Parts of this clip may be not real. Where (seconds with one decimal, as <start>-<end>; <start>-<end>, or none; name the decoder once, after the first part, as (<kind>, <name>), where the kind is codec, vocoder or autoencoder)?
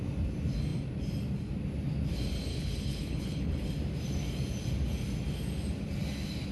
2.5-3.7 (codec, HILCodec)